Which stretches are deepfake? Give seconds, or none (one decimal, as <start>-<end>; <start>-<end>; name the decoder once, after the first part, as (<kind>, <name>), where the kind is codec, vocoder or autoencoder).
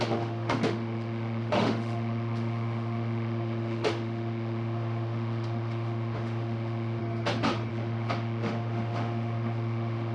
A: 0.0-7.0 (autoencoder, DAC-VAE); 7.7-10.1